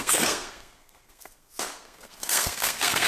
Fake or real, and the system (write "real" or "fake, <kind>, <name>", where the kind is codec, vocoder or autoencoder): fake, codec, SNAC